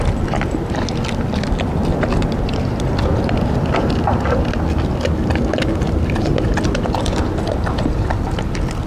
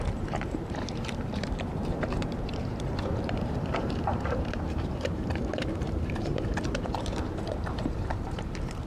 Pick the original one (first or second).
first